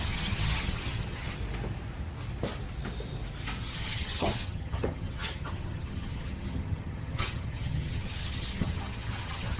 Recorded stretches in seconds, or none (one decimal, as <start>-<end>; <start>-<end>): 1.4-3.6